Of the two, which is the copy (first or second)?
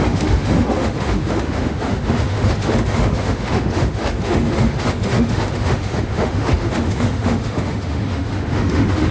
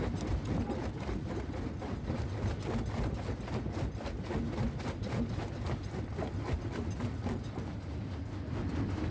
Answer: first